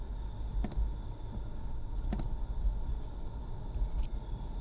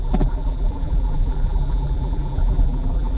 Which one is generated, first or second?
second